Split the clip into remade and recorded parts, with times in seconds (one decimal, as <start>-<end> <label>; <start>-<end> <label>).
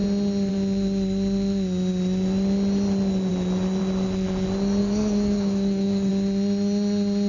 0.0-4.8 recorded; 4.8-6.1 remade; 6.1-7.3 recorded